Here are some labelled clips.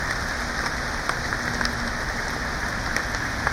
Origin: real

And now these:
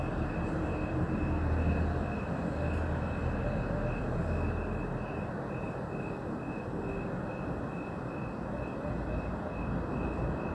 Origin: real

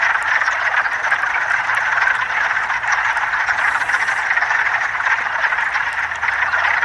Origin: real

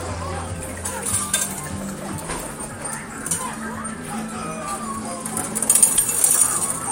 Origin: real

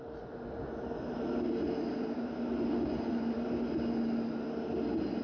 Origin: real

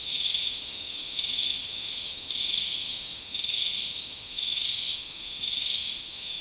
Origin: fake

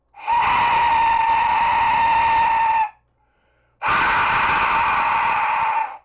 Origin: real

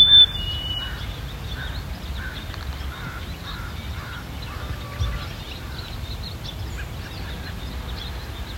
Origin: real